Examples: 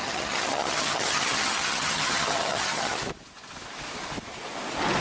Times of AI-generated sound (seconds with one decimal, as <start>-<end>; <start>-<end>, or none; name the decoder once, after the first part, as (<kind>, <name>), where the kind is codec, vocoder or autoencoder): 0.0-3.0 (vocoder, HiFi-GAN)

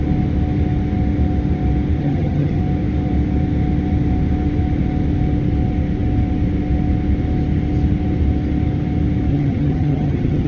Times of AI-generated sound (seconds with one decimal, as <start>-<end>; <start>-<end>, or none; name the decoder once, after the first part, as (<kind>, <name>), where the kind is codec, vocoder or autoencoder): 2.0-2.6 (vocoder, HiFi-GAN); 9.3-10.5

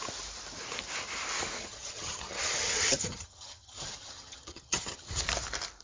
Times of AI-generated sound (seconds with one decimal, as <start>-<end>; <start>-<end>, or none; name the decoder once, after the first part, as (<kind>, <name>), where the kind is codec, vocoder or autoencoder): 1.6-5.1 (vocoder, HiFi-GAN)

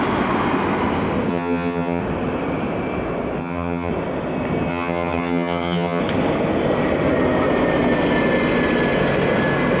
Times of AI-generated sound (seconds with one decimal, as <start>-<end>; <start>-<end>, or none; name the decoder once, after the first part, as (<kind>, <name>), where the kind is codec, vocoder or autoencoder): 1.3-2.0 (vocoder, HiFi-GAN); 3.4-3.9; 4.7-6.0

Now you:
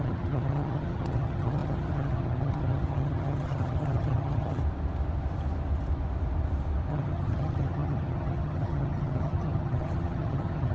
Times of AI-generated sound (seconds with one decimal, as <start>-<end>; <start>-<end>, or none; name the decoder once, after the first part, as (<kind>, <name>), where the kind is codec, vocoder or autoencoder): 0.0-4.6 (vocoder, HiFi-GAN); 6.9-10.7